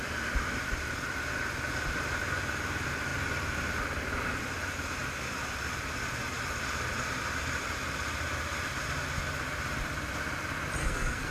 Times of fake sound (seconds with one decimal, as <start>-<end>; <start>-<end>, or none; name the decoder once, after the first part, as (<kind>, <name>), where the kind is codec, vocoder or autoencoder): 10.8-11.3 (codec, SNAC)